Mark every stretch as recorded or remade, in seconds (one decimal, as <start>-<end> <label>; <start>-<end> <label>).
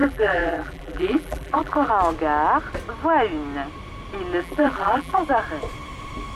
0.0-1.9 remade; 1.9-4.4 recorded; 4.4-5.2 remade; 5.2-6.3 recorded